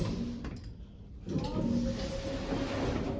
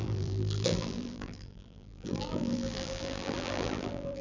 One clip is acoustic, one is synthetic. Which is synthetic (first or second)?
second